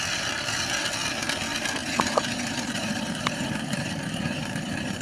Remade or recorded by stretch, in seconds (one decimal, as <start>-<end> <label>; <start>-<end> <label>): 0.0-1.8 recorded; 1.8-5.0 remade